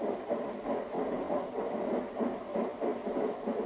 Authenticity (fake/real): real